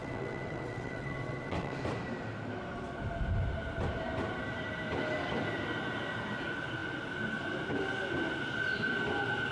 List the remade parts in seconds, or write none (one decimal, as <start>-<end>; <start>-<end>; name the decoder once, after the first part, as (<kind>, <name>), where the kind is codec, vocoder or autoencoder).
0.0-1.8 (vocoder, WaveNeXt)